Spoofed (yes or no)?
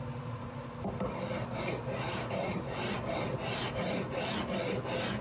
no